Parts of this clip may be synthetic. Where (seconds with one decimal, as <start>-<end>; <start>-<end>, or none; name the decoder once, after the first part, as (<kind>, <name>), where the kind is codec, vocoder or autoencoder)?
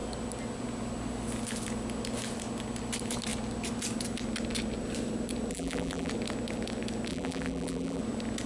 5.5-6.1 (vocoder, BigVGAN v2); 7.1-8.0